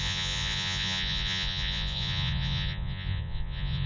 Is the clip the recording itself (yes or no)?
no